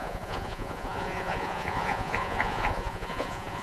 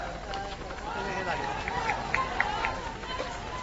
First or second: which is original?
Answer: second